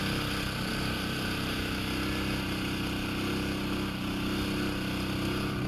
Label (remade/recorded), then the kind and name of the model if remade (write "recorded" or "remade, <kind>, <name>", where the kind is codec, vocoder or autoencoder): recorded